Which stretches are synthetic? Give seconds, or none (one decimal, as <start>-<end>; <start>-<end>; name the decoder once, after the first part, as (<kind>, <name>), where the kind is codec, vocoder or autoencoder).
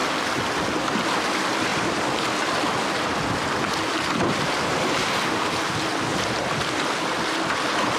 none